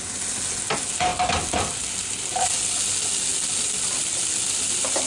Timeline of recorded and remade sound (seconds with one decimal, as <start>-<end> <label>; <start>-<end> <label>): 0.0-5.1 recorded